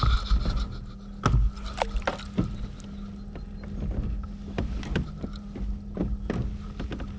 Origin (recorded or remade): recorded